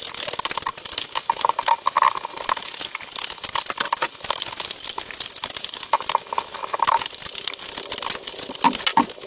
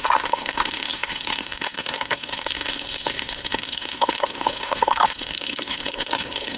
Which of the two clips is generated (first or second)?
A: second